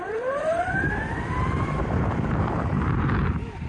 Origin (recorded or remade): remade